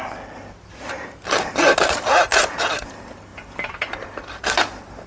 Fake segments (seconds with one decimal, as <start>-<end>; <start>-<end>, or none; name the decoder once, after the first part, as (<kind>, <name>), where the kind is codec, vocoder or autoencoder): none